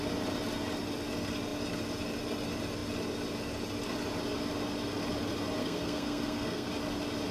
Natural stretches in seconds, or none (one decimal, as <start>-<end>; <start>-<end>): 0.0-5.6; 6.7-7.3